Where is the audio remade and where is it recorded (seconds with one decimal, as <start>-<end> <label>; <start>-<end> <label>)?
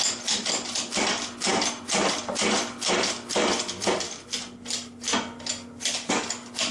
0.0-6.7 recorded